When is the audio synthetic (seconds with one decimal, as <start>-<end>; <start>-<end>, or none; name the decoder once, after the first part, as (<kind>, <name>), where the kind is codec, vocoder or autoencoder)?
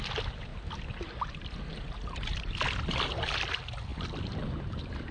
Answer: none